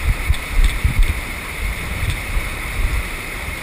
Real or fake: fake